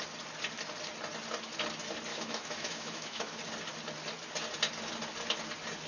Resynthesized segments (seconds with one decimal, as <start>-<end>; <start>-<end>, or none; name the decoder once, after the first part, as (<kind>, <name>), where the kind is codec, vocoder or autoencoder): 2.1-3.4 (autoencoder, DAC-VAE)